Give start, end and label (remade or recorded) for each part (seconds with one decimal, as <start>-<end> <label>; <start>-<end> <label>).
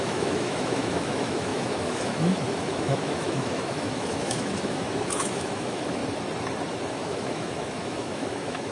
0.0-6.0 remade; 6.0-6.9 recorded; 6.9-8.7 remade